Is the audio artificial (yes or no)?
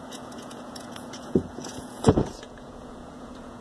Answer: yes